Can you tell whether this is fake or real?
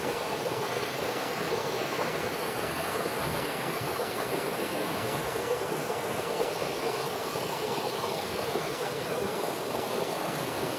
fake